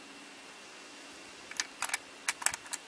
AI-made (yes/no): no